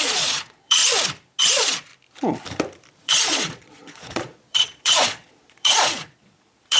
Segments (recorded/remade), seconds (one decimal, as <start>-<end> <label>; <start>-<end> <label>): 0.0-0.8 remade; 0.8-1.4 recorded; 1.4-1.9 remade; 1.9-2.9 recorded; 2.9-6.8 remade